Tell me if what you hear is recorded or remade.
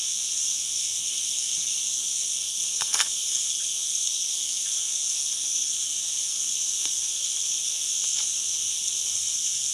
remade